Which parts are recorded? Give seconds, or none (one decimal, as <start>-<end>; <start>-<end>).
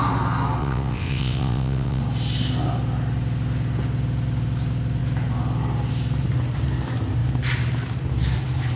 0.0-0.6; 2.0-8.8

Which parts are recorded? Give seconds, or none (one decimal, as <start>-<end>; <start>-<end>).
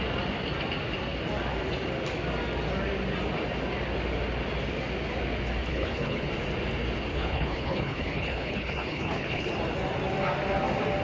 0.0-5.7; 6.3-7.1; 9.5-11.0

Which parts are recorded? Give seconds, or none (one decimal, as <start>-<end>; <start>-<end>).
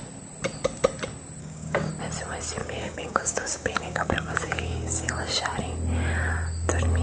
0.0-1.4; 1.9-2.6; 5.1-7.0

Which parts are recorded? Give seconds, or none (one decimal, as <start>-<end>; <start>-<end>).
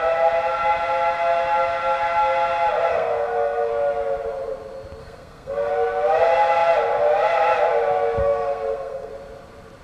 0.0-2.9; 3.7-5.0; 5.7-8.2; 9.1-9.8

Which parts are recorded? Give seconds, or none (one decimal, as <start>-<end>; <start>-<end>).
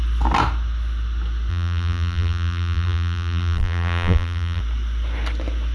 0.0-1.5; 4.6-5.7